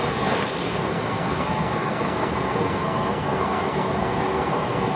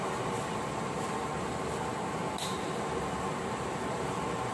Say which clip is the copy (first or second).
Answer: first